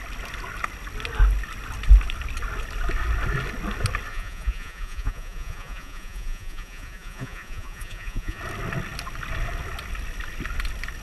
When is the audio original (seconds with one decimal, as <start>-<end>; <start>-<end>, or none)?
0.0-4.1; 8.4-11.0